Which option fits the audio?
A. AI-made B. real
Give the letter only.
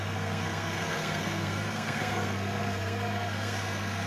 A